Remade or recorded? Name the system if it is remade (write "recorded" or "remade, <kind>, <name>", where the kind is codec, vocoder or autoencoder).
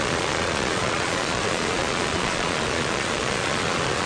remade, vocoder, Vocos